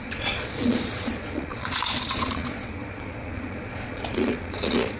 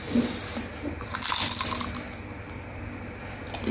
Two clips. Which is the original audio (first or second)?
second